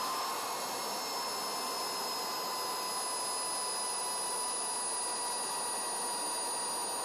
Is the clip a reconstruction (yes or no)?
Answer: no